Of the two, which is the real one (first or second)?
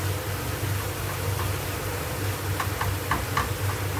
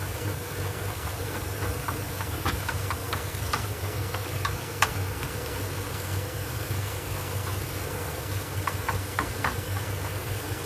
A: first